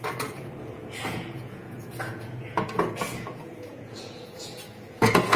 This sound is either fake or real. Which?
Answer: fake